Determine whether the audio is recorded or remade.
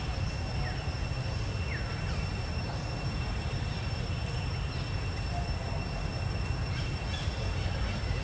recorded